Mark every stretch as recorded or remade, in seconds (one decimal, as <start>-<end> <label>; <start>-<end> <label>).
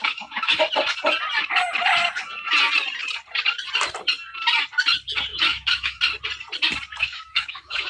0.0-0.6 remade; 0.6-5.3 recorded; 5.3-6.0 remade; 6.0-7.0 recorded; 7.0-7.9 remade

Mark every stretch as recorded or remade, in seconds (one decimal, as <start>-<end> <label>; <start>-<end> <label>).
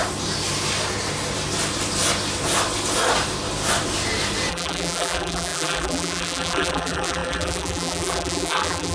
0.0-4.5 recorded; 4.5-8.9 remade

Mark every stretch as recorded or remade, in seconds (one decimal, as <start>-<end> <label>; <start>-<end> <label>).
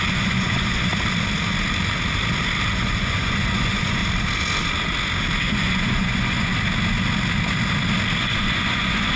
0.0-0.9 remade; 0.9-2.7 recorded; 2.7-4.0 remade; 4.0-5.4 recorded; 5.4-6.5 remade; 6.5-8.2 recorded; 8.2-9.2 remade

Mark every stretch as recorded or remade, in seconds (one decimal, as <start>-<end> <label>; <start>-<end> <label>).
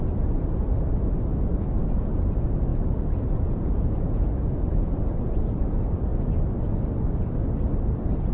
0.0-2.7 recorded; 2.7-4.3 remade; 4.3-8.3 recorded